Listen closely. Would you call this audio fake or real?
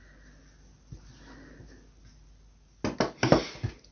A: real